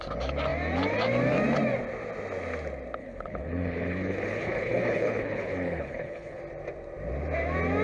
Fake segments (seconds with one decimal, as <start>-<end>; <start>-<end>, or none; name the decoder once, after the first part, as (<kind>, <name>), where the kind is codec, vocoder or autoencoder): 3.0-6.4 (codec, HILCodec)